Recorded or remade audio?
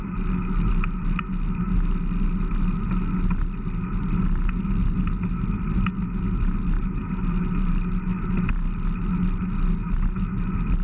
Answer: recorded